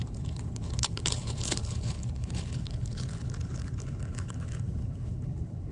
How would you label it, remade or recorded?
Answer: remade